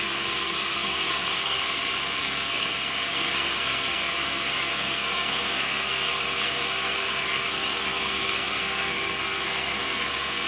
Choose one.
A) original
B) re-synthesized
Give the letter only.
B